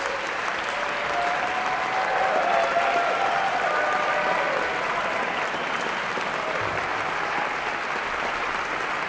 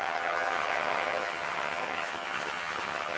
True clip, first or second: first